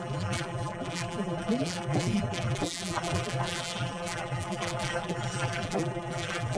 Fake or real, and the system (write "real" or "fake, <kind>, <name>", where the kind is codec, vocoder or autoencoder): fake, vocoder, BigVGAN v2